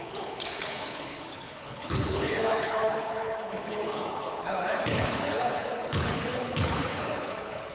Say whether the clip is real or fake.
fake